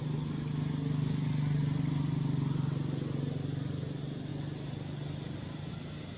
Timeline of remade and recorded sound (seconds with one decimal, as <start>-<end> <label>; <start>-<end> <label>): 0.0-6.2 recorded